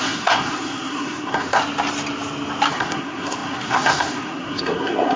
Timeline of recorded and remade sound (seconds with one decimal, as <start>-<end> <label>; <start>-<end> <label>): 0.0-1.6 remade; 1.6-2.7 recorded; 2.7-5.2 remade